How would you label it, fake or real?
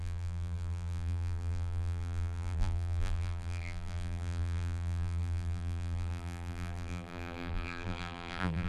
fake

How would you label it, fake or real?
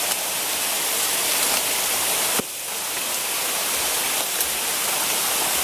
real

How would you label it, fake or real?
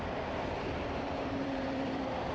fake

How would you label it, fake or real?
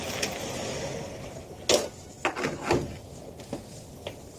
real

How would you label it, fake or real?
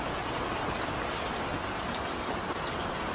real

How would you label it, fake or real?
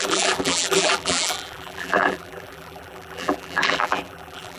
fake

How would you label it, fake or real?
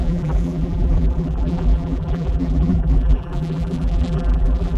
fake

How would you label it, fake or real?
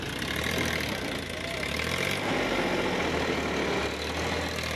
real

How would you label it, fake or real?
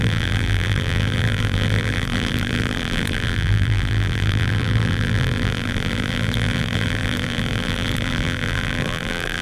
fake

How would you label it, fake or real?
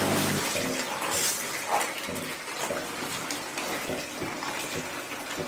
real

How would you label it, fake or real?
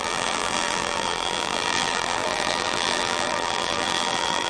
fake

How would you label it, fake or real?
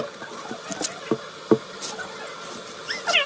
real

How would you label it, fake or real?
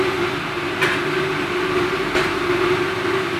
real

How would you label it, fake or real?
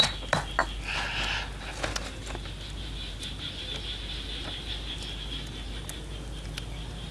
real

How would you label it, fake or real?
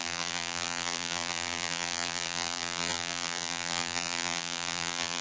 fake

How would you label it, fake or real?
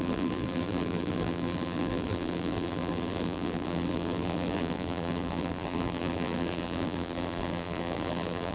fake